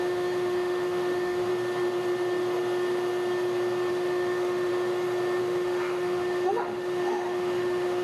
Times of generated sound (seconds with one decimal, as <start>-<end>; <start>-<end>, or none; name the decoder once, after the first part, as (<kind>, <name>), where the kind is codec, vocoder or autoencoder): 0.0-1.5 (autoencoder, DAC-VAE); 3.9-4.7; 5.4-8.0